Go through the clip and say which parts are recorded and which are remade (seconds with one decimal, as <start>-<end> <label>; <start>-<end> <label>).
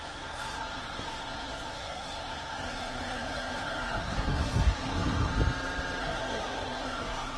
0.0-5.3 remade; 5.3-6.0 recorded; 6.0-7.4 remade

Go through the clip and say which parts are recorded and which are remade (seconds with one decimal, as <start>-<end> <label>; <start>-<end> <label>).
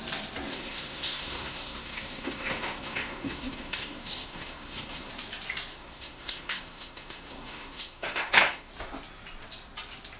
0.0-0.5 recorded; 0.5-5.1 remade; 5.1-5.7 recorded; 5.7-8.7 remade; 8.7-10.2 recorded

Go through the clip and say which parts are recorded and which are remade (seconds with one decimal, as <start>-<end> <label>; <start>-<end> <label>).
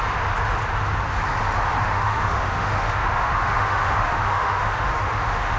0.0-1.8 recorded; 1.8-5.6 remade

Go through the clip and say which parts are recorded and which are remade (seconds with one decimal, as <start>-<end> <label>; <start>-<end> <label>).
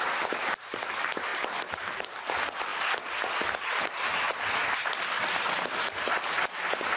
0.0-7.0 recorded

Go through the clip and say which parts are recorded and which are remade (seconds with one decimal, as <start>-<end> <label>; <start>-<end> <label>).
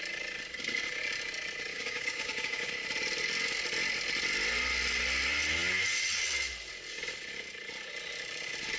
0.0-1.7 recorded; 1.7-2.7 remade; 2.7-8.8 recorded